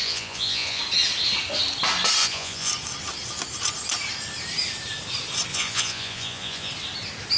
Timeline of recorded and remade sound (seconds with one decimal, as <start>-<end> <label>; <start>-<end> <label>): 0.0-0.8 remade; 0.8-2.2 recorded; 2.2-2.7 remade; 2.7-5.5 recorded; 5.5-6.7 remade; 6.7-7.4 recorded

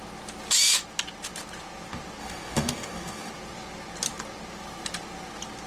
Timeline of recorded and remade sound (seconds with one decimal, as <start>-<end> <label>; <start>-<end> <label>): 0.0-2.2 recorded; 2.2-3.3 remade; 3.3-5.7 recorded

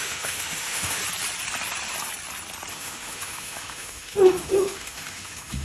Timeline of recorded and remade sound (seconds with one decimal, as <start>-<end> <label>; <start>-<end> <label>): 0.0-1.0 remade; 1.0-2.7 recorded; 2.7-5.6 remade